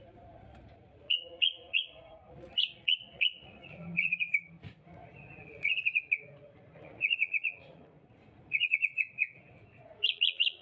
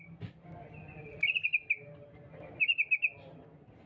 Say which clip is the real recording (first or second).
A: second